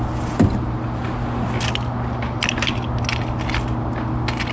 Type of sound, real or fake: real